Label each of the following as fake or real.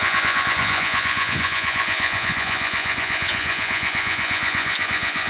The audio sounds fake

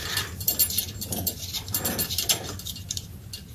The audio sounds real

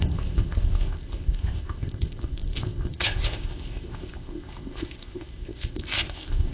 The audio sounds fake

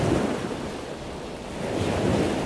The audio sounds real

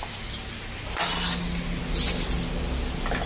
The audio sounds real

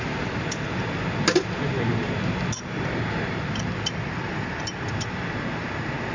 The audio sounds real